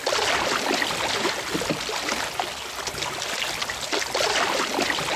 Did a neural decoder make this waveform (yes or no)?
no